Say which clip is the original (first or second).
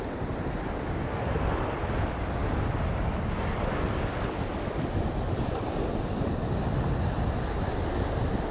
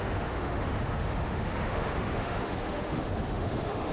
first